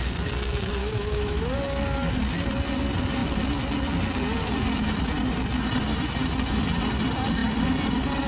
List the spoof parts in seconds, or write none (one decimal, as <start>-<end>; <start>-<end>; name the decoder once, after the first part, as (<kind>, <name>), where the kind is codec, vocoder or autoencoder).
0.8-1.4 (autoencoder, DAC-VAE)